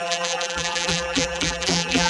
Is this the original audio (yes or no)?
no